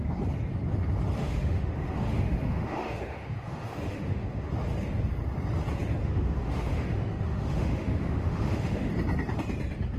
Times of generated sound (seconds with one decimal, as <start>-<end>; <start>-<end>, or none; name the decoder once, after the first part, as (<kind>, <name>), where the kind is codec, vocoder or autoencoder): 1.2-4.5 (autoencoder, DAC-VAE); 6.0-8.9